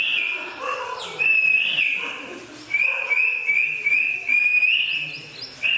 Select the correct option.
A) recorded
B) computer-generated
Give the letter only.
A